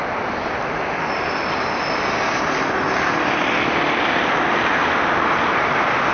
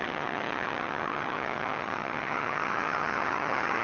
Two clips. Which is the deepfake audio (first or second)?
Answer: second